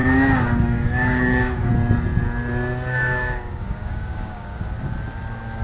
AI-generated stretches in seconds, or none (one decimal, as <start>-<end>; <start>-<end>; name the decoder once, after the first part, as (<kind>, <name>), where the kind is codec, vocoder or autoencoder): 0.0-1.7 (codec, DAC); 2.9-4.6